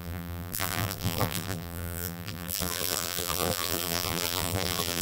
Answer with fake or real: fake